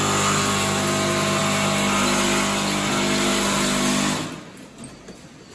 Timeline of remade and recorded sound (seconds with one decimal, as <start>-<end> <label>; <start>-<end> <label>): 0.0-5.5 recorded